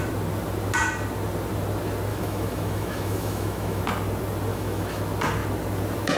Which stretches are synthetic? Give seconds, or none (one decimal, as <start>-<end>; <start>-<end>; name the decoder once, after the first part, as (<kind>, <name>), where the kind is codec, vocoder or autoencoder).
2.1-3.8 (autoencoder, DAC-VAE); 4.5-5.0